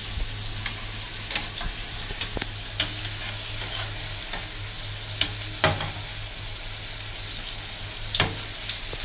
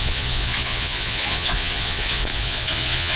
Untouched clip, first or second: first